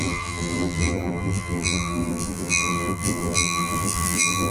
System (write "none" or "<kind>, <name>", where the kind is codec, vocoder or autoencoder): vocoder, BigVGAN v2